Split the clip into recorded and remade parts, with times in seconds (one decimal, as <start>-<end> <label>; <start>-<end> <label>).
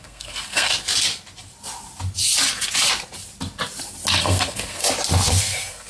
0.0-0.7 remade; 0.7-4.2 recorded; 4.2-4.8 remade; 4.8-5.4 recorded; 5.4-5.9 remade